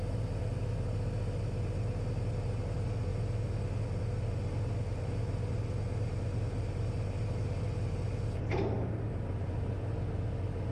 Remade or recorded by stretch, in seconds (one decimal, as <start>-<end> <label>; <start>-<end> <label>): 0.0-10.7 recorded